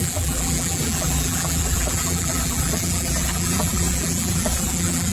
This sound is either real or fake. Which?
fake